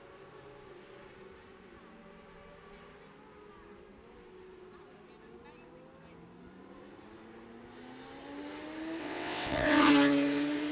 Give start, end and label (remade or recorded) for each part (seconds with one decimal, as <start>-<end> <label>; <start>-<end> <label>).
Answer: 0.0-9.0 recorded; 9.0-9.9 remade; 9.9-10.7 recorded